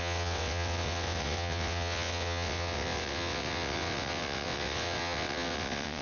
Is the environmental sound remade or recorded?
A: remade